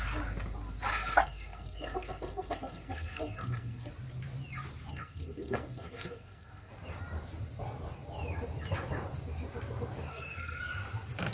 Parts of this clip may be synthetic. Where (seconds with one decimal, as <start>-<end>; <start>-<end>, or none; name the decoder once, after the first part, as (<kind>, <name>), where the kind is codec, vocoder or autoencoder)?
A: 0.9-3.9 (codec, SNAC); 4.9-6.7; 10.1-10.6